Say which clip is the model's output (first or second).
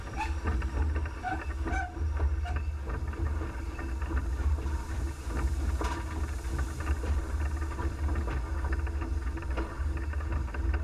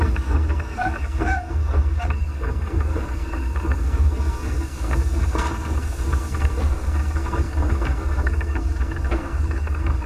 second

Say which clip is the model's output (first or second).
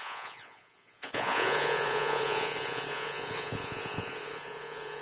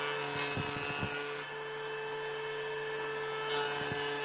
first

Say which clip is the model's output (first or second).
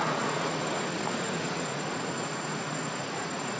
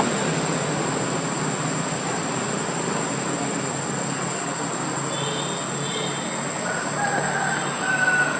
first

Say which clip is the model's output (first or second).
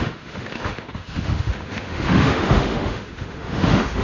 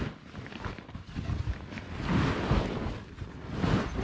first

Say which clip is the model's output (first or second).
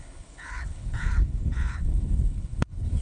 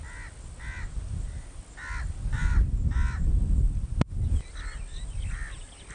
first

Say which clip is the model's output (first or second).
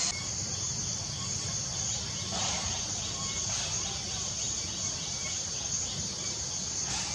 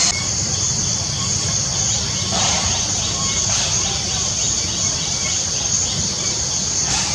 second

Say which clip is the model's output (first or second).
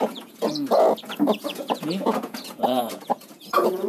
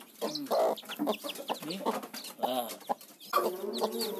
first